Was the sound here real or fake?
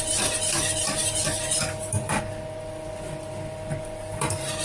fake